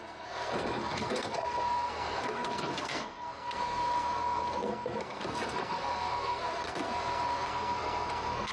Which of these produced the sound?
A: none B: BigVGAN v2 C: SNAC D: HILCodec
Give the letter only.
C